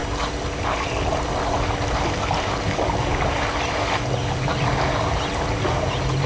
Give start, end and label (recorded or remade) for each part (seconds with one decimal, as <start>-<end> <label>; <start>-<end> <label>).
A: 0.0-6.3 recorded